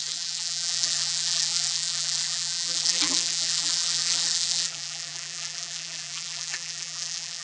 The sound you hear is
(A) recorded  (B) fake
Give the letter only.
B